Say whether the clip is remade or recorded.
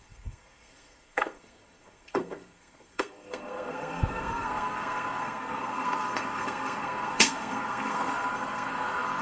remade